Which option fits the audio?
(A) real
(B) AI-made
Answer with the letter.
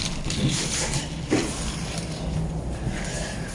B